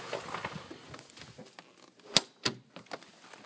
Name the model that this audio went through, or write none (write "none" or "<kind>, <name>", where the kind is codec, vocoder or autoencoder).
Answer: none